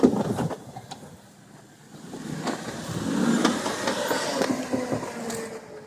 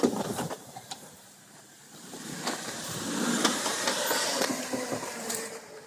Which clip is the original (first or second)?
first